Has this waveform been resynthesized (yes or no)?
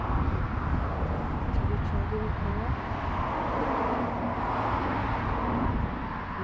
no